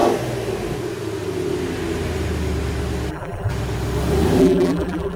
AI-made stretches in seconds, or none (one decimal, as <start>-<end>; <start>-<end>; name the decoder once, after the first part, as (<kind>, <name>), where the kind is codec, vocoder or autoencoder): 3.1-3.5 (vocoder, BigVGAN v2); 4.4-5.2